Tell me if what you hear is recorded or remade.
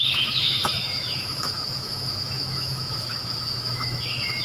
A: remade